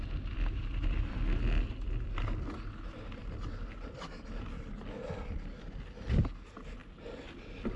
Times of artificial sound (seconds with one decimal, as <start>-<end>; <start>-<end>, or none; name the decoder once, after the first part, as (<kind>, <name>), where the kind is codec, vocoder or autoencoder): none